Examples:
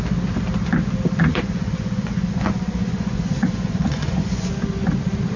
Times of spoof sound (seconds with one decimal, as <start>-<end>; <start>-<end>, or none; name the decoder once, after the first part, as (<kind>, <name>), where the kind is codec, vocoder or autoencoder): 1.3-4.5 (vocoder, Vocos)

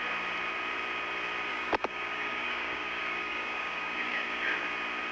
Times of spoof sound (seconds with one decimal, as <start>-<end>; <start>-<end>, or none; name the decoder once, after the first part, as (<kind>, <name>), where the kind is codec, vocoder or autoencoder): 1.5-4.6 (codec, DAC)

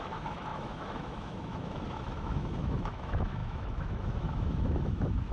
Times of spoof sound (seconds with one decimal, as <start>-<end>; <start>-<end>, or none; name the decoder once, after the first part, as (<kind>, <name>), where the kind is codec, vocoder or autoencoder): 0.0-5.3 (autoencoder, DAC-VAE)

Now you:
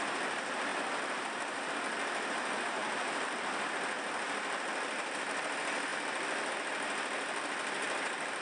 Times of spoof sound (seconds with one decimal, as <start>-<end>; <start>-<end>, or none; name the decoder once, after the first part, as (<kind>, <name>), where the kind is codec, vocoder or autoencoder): 0.7-1.7 (vocoder, BigVGAN v2); 2.8-3.7; 5.9-6.5

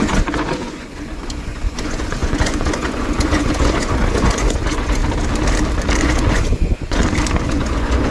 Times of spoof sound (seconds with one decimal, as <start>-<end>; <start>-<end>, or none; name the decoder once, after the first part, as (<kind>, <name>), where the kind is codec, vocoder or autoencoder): 0.0-5.0 (vocoder, Vocos); 6.0-7.0; 7.5-8.1

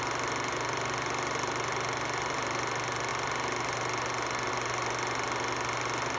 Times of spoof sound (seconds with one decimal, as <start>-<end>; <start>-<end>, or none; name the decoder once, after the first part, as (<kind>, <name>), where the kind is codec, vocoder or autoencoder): none